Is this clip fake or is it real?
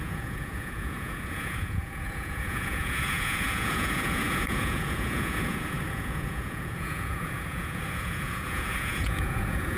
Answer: fake